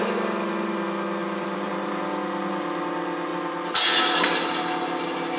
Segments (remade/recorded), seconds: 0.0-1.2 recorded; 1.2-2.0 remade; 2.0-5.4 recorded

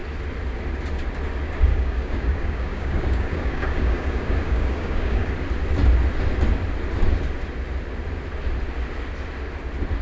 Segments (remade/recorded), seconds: 0.0-1.7 recorded; 1.7-5.3 remade; 5.3-10.0 recorded

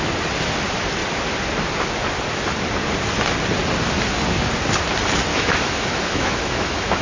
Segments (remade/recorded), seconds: 0.0-5.3 recorded; 5.3-7.0 remade

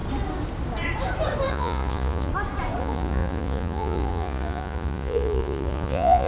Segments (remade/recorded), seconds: 0.0-1.5 recorded; 1.5-2.3 remade; 2.3-2.8 recorded; 2.8-6.3 remade

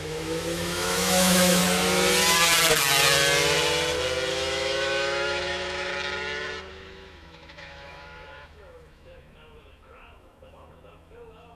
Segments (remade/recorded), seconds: 0.0-1.6 remade; 1.6-4.3 recorded; 4.3-5.9 remade; 5.9-6.7 recorded; 6.7-11.6 remade

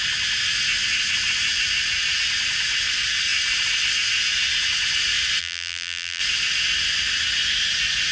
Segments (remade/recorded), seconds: 0.0-5.4 recorded; 5.4-6.2 remade; 6.2-8.1 recorded

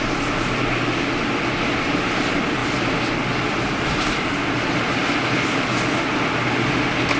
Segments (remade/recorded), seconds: 0.0-7.2 recorded

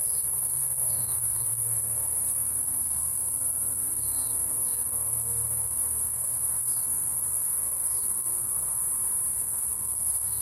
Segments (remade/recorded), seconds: 0.0-8.8 remade; 8.8-9.3 recorded; 9.3-10.4 remade